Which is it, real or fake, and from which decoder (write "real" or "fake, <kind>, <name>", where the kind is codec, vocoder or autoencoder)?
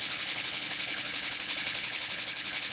fake, codec, HILCodec